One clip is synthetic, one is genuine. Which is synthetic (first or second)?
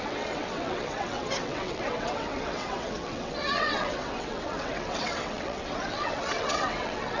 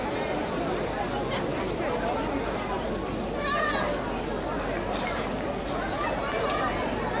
first